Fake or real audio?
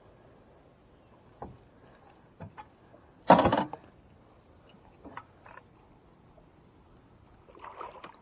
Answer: real